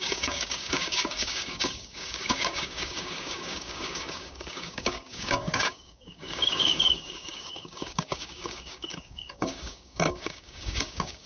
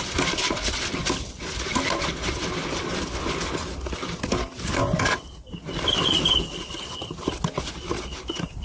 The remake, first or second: first